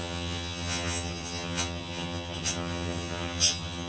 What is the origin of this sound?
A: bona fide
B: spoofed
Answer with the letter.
B